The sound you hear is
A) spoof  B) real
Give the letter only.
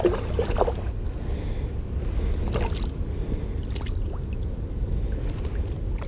B